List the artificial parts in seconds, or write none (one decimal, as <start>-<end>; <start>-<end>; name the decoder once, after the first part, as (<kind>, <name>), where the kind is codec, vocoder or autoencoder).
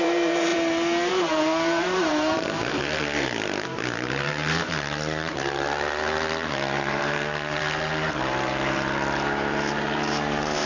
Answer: 0.0-10.7 (vocoder, BigVGAN v2)